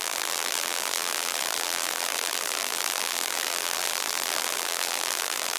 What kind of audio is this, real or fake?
fake